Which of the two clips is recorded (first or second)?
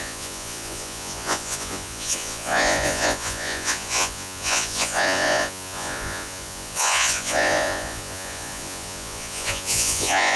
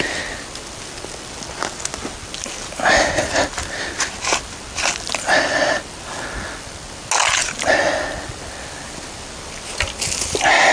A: second